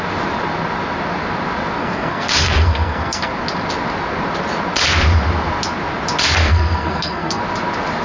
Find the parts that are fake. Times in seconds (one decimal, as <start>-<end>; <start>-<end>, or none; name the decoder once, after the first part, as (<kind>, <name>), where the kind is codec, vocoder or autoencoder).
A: 1.8-3.3 (codec, SNAC); 6.4-7.4